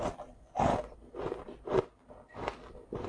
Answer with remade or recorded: recorded